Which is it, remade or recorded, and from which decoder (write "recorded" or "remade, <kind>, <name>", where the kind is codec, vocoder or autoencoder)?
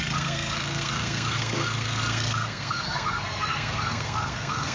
remade, codec, SNAC